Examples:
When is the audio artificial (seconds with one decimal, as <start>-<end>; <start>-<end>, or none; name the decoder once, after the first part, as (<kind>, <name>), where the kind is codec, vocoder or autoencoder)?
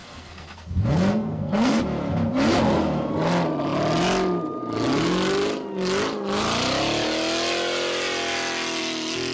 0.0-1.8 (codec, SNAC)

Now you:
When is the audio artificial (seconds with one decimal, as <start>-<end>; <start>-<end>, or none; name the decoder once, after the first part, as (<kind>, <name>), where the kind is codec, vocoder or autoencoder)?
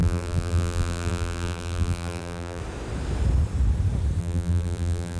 0.0-2.6 (vocoder, BigVGAN v2); 4.2-5.2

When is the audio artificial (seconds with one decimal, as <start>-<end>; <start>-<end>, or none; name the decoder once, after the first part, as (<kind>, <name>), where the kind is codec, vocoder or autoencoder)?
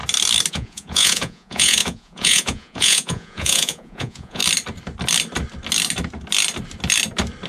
0.5-4.4 (vocoder, Vocos)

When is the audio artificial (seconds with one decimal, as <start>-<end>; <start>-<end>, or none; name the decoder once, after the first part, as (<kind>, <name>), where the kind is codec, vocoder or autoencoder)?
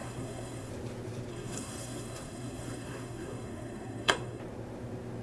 0.0-0.7 (codec, SNAC); 1.3-4.4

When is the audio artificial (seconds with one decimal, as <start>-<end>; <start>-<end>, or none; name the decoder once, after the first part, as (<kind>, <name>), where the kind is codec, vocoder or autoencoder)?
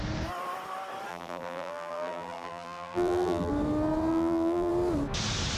1.1-3.5 (vocoder, BigVGAN v2); 4.1-4.7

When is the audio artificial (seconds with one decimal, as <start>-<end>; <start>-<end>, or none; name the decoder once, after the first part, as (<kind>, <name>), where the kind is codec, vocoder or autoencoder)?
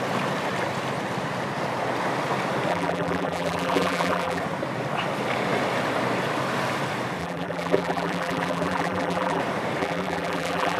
2.7-4.4 (vocoder, BigVGAN v2); 7.2-9.4; 9.8-10.8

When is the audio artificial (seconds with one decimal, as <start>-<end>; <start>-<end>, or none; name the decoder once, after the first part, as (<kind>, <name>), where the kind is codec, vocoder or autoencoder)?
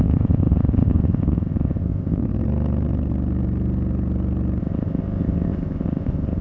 0.0-2.2 (codec, ZipCodec); 4.6-6.4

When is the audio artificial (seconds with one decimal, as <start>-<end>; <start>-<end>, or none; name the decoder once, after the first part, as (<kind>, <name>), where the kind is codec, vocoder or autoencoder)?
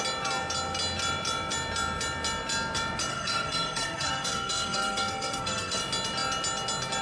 3.1-5.8 (codec, SNAC)